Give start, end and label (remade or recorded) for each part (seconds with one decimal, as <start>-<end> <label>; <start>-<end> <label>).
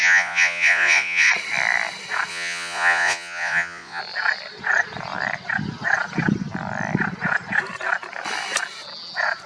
0.0-1.3 remade; 1.3-2.3 recorded; 2.3-4.0 remade; 4.0-9.5 recorded